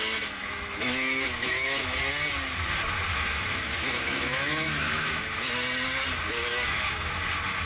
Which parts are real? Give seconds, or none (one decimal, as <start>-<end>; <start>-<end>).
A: 2.1-3.1; 5.2-6.5; 7.1-7.7